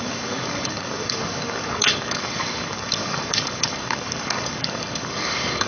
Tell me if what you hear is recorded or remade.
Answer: remade